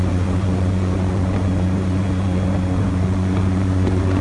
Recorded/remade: remade